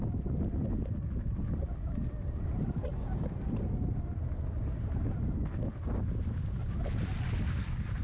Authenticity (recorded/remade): recorded